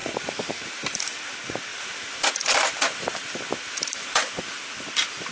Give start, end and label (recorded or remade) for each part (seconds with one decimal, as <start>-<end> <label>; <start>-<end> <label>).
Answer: 0.0-1.0 remade; 1.0-1.7 recorded; 1.7-4.3 remade; 4.3-5.3 recorded